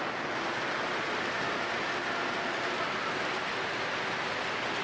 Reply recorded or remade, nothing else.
recorded